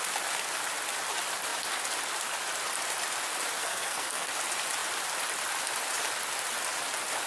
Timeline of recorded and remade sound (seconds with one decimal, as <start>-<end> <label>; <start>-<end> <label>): 0.0-3.6 recorded; 3.6-4.3 remade; 4.3-7.3 recorded